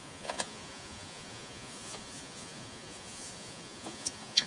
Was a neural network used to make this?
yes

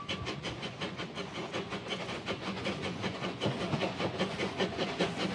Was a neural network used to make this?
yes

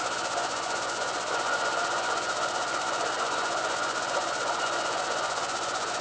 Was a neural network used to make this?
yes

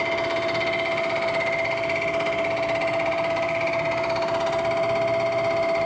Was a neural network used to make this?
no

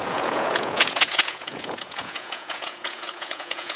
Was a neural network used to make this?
yes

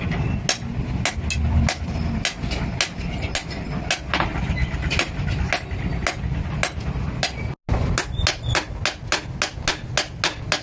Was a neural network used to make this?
no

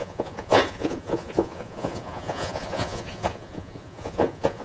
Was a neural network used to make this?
yes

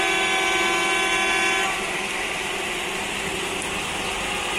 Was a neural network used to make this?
no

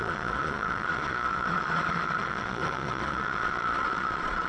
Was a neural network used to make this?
yes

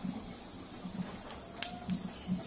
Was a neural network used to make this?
no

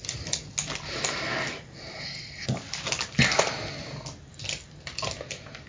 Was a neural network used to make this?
no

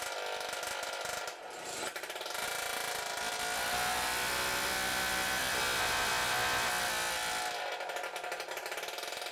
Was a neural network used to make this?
no